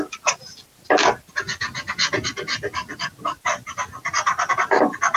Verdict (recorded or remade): recorded